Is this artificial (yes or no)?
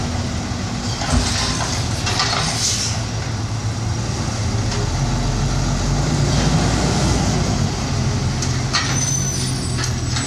no